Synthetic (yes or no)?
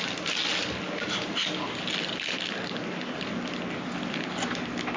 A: no